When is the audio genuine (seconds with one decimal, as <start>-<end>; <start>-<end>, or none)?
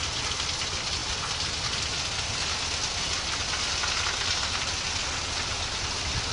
0.0-6.3